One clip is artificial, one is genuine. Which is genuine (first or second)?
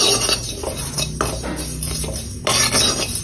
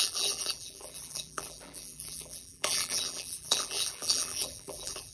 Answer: first